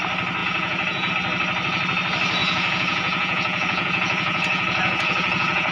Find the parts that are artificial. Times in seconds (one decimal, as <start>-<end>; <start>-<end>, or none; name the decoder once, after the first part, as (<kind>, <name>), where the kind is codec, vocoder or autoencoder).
0.4-1.1 (vocoder, Vocos); 2.4-5.7